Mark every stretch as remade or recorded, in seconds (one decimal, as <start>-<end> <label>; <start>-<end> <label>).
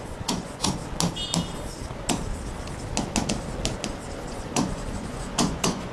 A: 0.0-0.8 remade; 0.8-4.3 recorded; 4.3-5.9 remade